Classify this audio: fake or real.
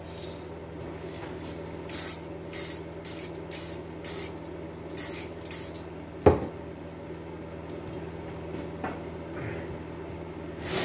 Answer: real